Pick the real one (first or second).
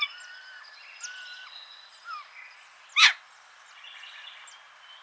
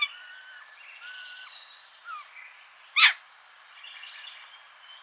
first